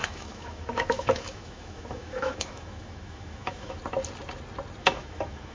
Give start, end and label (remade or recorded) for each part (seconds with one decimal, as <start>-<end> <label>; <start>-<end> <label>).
0.0-3.8 remade; 3.8-4.8 recorded; 4.8-5.5 remade

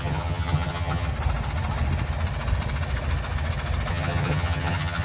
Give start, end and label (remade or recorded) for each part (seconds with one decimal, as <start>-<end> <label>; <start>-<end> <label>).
0.0-1.1 remade; 1.1-3.9 recorded; 3.9-5.0 remade

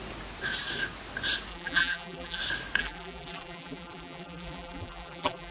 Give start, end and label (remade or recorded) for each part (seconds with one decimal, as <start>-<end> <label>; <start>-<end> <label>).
0.0-1.5 recorded; 1.5-2.4 remade; 2.4-2.8 recorded; 2.8-5.5 remade

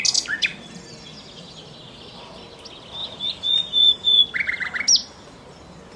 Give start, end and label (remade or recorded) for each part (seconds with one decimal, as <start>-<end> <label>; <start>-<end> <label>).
0.0-3.0 recorded; 3.0-4.2 remade; 4.2-6.0 recorded

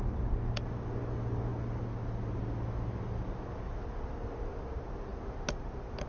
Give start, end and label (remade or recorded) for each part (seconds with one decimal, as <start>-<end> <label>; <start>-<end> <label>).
0.0-6.1 recorded

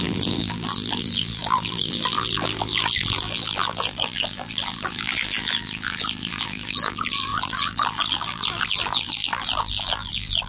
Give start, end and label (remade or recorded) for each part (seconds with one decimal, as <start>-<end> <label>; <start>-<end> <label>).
0.0-10.5 remade

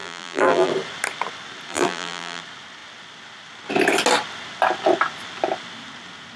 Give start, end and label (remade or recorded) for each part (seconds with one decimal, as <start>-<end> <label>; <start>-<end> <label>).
0.0-0.7 remade; 0.7-1.7 recorded; 1.7-2.4 remade; 2.4-6.4 recorded